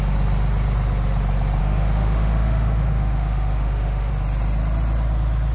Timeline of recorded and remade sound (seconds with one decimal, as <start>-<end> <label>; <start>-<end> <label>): 0.0-1.6 recorded; 1.6-4.1 remade; 4.1-5.5 recorded